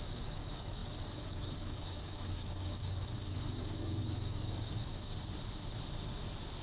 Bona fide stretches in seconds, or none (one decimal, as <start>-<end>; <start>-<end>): 5.1-6.6

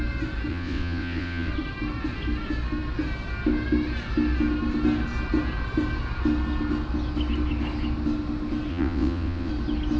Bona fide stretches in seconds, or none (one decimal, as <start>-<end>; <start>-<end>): 0.0-0.5; 1.5-8.7; 9.5-10.0

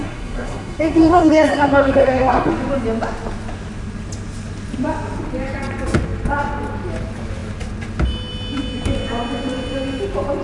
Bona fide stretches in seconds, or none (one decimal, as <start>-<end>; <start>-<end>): 2.5-10.4

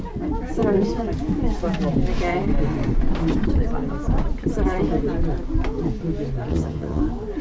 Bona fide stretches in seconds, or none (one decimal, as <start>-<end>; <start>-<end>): 0.0-6.5; 7.0-7.4

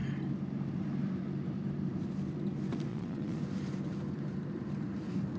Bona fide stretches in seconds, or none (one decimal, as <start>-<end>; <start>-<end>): 0.0-2.9; 3.4-5.4

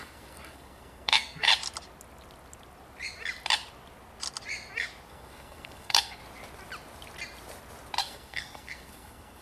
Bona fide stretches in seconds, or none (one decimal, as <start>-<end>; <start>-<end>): 1.5-5.1; 6.2-8.0